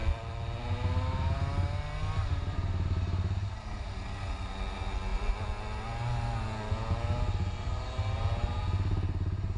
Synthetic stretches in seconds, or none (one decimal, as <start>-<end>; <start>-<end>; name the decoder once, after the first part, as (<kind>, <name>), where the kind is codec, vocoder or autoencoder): none